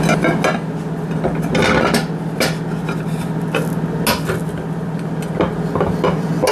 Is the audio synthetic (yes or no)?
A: no